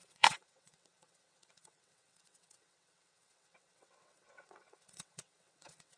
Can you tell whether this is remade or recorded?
remade